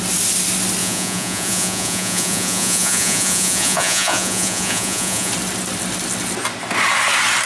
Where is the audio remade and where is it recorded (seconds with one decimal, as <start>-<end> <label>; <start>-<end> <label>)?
0.0-0.8 recorded; 0.8-5.3 remade; 5.3-7.5 recorded